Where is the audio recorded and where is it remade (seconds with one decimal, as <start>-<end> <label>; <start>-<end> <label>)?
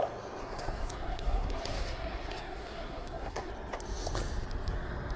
0.0-0.4 recorded; 0.4-3.5 remade; 3.5-5.2 recorded